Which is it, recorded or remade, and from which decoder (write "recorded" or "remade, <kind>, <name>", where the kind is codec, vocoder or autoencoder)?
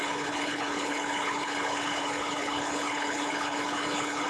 remade, codec, HILCodec